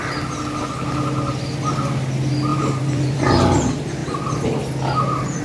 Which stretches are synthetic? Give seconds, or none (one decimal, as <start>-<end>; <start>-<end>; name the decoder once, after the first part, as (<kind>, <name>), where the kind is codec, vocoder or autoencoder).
2.5-3.3 (vocoder, BigVGAN v2)